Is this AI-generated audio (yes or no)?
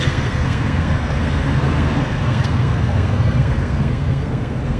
yes